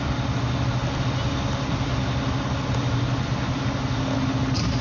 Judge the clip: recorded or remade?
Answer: recorded